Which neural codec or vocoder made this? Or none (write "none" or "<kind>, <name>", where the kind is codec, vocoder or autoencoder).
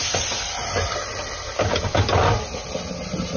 vocoder, BigVGAN v2